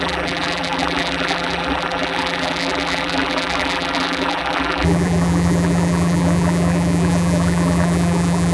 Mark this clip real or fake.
fake